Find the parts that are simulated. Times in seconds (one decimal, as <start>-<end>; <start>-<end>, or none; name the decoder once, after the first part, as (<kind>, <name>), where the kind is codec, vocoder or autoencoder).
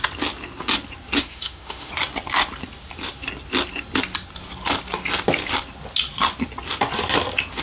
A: 1.2-1.9 (autoencoder, DAC-VAE)